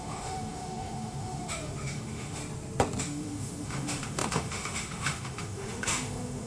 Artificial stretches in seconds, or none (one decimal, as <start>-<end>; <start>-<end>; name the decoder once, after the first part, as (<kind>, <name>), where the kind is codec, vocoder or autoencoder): 0.0-2.4 (autoencoder, DAC-VAE); 3.0-6.5